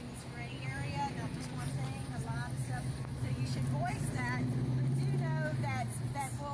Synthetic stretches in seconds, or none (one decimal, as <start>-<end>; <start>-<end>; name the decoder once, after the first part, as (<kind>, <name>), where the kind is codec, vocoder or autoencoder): none